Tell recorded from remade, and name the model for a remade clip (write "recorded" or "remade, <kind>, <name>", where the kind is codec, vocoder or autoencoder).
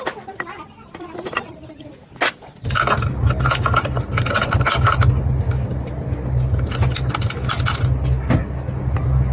recorded